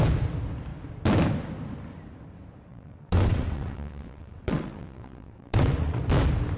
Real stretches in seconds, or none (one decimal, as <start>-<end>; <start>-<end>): 0.0-2.7; 6.0-6.6